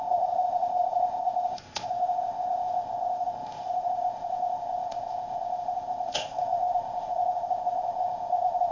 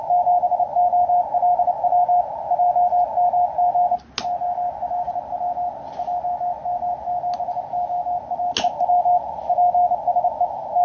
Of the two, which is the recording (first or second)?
second